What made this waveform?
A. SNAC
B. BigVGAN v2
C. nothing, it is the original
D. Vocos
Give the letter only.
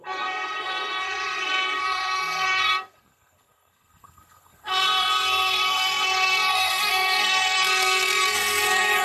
A